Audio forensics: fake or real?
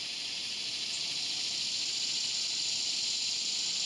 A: real